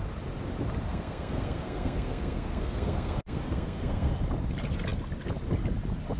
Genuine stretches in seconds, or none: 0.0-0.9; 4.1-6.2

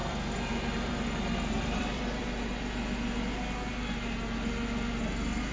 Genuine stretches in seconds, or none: 2.4-5.5

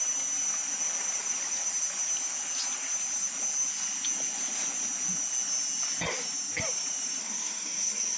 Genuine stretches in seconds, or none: 0.0-7.2

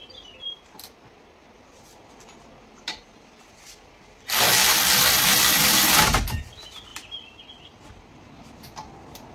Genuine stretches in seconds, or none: 0.0-1.4; 5.8-6.9; 7.5-9.3